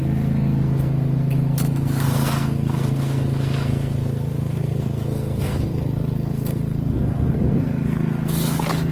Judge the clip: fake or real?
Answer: fake